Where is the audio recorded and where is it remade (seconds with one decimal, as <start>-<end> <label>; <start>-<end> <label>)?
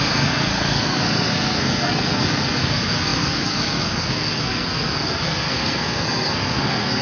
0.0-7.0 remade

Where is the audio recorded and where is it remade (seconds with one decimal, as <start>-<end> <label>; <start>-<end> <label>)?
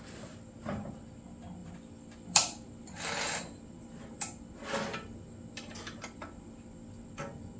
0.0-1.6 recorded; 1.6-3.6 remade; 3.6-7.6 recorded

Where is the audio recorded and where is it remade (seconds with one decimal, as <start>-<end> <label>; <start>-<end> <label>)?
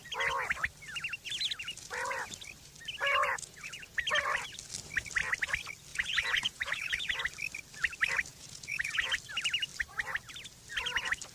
0.0-3.3 recorded; 3.3-4.0 remade; 4.0-5.9 recorded; 5.9-7.1 remade; 7.1-8.3 recorded; 8.3-9.1 remade; 9.1-11.3 recorded